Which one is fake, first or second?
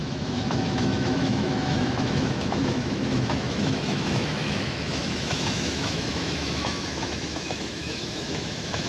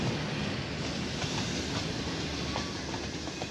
first